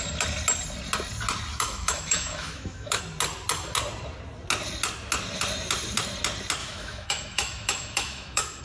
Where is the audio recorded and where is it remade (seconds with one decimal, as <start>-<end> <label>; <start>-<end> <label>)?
0.0-1.5 recorded; 1.5-3.0 remade; 3.0-6.6 recorded; 6.6-8.6 remade